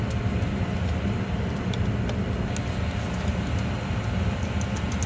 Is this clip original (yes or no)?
yes